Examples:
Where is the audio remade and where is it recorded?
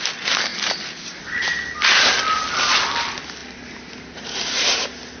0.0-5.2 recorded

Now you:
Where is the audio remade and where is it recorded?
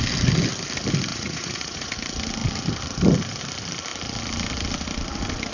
0.0-1.1 recorded; 1.1-1.9 remade; 1.9-5.5 recorded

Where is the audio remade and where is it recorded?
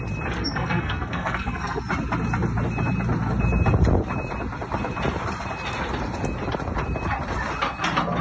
0.0-0.4 recorded; 0.4-1.8 remade; 1.8-8.2 recorded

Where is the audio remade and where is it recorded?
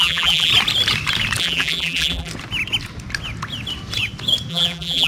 0.0-0.5 remade; 0.5-1.4 recorded; 1.4-2.3 remade; 2.3-4.5 recorded; 4.5-5.1 remade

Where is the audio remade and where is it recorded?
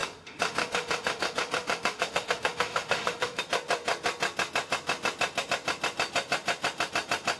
0.0-3.4 remade; 3.4-7.4 recorded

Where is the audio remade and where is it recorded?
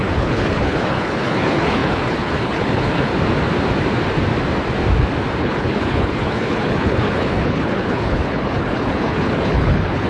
0.0-3.1 remade; 3.1-5.4 recorded; 5.4-10.1 remade